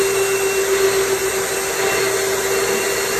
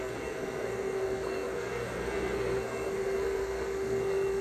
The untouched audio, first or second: first